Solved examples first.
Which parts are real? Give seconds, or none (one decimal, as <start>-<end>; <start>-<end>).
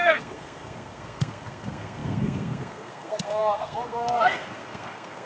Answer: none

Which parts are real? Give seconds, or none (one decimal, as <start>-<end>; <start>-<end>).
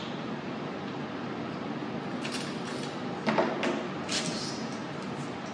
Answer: 0.0-5.5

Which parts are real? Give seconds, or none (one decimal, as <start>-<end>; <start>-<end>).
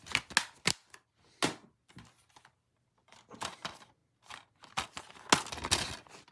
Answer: 0.0-6.3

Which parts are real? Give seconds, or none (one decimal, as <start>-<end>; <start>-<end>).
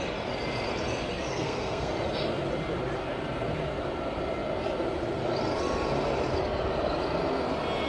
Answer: 0.0-1.3; 1.9-7.9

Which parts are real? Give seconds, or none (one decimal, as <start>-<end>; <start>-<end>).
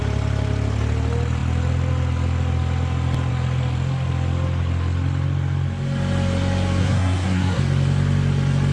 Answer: 0.0-6.8; 7.6-8.7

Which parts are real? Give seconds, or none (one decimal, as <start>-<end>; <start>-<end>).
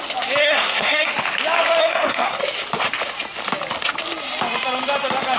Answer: 0.0-0.4; 1.1-1.8; 2.4-5.4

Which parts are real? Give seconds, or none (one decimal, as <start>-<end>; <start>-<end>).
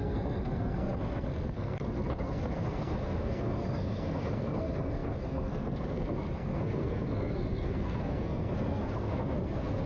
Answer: none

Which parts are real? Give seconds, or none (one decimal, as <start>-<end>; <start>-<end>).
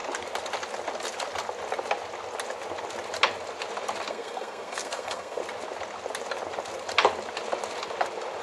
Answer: 0.0-4.1; 5.4-8.4